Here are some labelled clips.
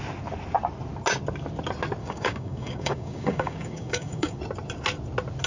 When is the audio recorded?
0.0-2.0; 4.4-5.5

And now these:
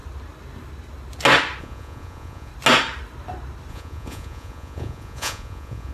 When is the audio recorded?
0.0-1.6; 2.5-3.7